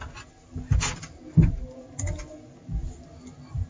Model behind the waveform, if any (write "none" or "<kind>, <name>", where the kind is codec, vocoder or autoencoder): none